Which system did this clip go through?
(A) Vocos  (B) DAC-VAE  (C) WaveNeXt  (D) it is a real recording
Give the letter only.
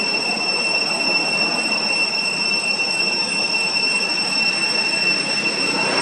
D